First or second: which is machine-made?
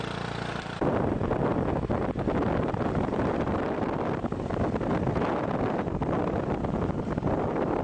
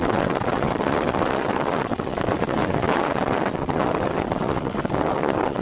second